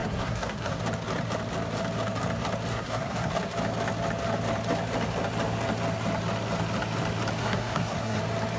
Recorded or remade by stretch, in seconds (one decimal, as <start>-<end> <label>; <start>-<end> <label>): 0.0-0.8 remade; 0.8-2.7 recorded; 2.7-3.3 remade; 3.3-7.4 recorded; 7.4-8.2 remade; 8.2-8.6 recorded